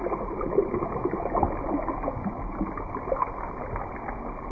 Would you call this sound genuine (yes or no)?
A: yes